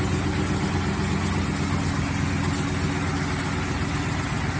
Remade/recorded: recorded